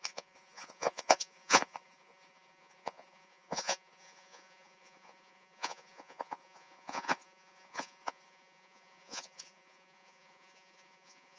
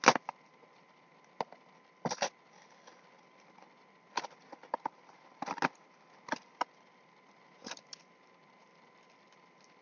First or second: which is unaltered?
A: second